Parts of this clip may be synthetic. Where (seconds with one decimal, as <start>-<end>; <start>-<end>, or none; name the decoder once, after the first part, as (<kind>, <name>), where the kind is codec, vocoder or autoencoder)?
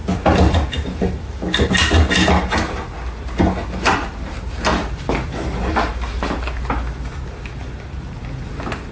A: none